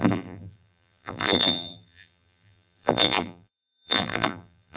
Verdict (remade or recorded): remade